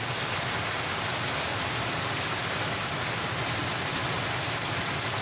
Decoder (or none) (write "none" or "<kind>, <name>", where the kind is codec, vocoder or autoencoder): none